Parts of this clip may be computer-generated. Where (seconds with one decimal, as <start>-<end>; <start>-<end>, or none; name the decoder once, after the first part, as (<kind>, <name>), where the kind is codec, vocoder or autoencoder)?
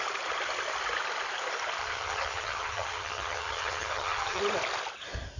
1.8-4.4 (vocoder, HiFi-GAN)